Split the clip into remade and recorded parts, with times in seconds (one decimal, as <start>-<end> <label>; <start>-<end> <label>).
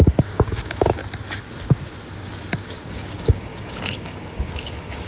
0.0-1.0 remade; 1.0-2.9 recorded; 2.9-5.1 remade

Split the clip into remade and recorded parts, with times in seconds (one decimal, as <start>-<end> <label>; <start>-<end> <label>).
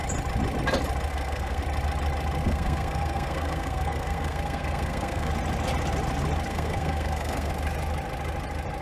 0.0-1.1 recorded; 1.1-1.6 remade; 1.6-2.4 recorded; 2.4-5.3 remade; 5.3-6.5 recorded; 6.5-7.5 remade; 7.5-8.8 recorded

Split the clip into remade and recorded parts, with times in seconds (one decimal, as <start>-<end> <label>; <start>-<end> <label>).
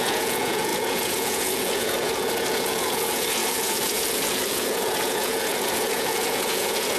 0.0-7.0 remade